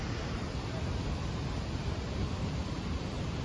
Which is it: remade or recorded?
recorded